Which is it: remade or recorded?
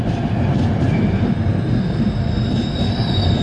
remade